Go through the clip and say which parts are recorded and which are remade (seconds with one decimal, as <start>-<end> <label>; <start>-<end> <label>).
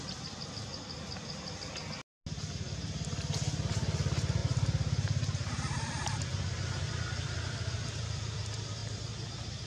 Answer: 0.0-4.4 recorded; 4.4-6.2 remade; 6.2-9.7 recorded